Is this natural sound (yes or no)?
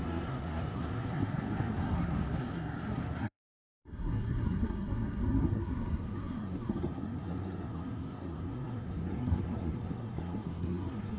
no